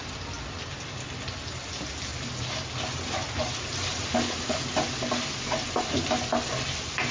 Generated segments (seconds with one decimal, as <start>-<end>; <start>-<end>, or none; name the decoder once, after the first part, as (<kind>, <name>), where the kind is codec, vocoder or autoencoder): none